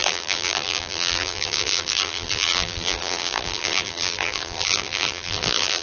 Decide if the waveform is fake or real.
fake